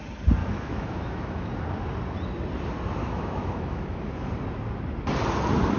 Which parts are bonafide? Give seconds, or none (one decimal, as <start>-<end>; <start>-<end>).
0.0-0.4; 1.5-3.0; 4.3-5.8